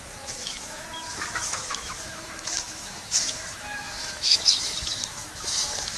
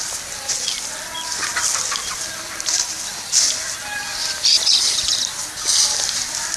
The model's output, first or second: first